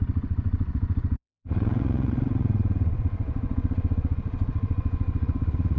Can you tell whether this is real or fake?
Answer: fake